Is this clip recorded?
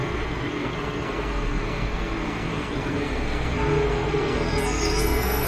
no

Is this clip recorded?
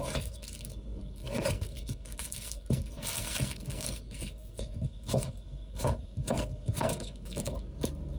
no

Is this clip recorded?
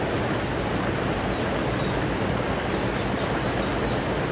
yes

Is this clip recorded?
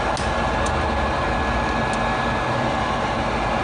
yes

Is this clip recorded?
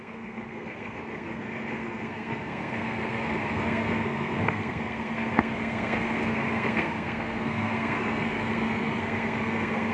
no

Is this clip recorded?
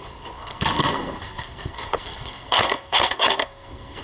no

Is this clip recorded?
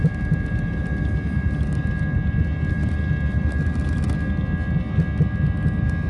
yes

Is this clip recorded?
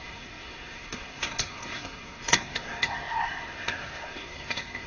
no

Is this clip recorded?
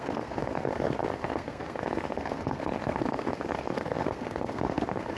no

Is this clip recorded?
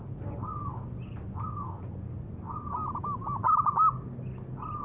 yes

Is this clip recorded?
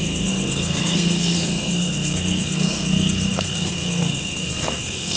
no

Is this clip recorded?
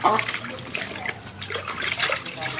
yes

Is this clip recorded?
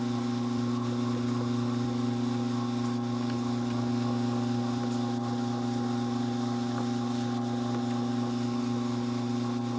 yes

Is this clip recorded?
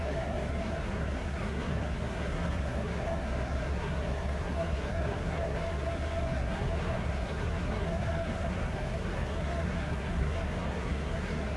no